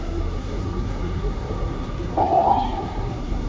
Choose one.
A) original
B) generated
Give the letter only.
B